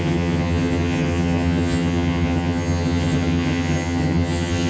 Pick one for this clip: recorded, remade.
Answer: remade